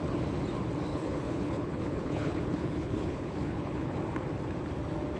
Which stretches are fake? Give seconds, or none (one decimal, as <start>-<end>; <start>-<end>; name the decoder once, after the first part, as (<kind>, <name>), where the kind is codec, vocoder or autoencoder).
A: 0.9-4.0 (codec, HILCodec)